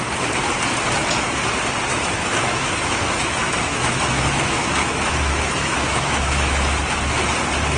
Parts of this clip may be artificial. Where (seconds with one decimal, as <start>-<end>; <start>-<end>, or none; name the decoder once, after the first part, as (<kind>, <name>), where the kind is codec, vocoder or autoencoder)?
1.9-6.6 (autoencoder, DAC-VAE)